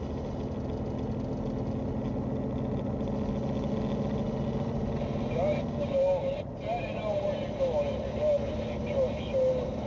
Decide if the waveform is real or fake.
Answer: real